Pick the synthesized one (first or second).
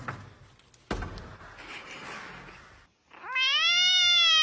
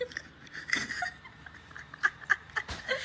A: second